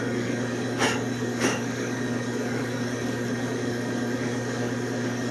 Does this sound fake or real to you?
fake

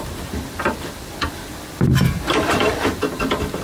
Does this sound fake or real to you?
fake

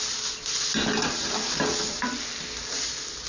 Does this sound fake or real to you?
real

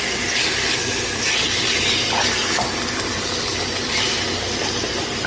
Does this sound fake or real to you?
real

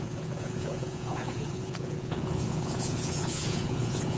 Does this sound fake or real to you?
fake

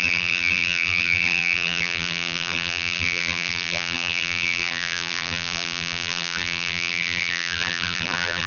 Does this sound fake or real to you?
fake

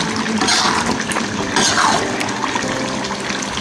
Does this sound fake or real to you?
real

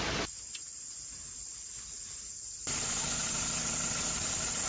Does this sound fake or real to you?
real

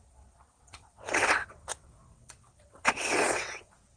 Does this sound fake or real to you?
fake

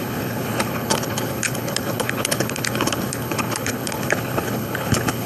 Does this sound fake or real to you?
fake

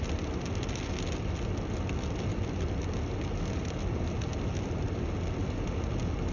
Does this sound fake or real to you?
real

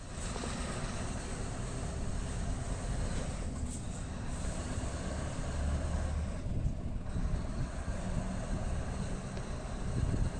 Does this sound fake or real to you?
real